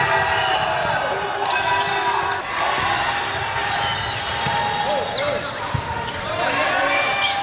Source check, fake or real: real